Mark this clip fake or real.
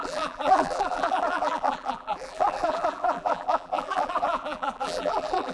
fake